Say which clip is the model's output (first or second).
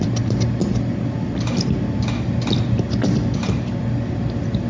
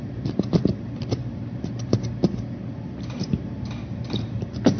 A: second